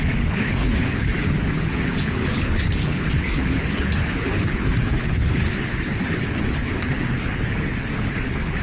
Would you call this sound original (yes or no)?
no